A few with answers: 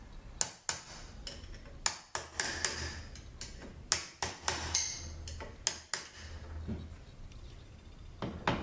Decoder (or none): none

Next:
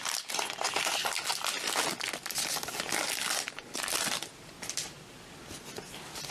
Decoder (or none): none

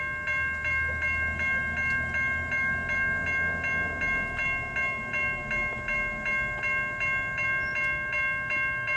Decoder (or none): none